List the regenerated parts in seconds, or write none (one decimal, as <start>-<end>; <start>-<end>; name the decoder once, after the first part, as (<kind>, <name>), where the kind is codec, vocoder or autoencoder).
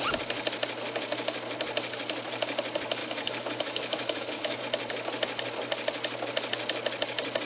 3.0-4.6 (autoencoder, DAC-VAE)